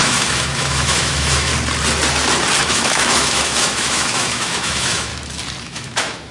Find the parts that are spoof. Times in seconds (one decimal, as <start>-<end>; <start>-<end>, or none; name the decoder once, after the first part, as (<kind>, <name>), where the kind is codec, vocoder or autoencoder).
0.0-1.5 (autoencoder, DAC-VAE); 2.6-5.1; 5.6-6.3